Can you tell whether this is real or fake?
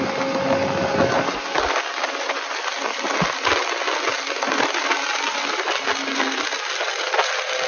real